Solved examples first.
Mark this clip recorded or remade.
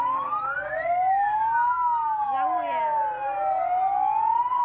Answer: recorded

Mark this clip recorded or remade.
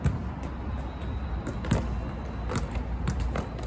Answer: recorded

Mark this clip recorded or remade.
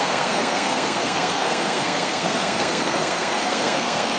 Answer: remade